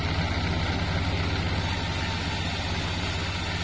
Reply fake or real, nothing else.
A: real